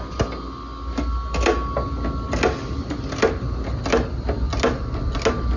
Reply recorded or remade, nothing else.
recorded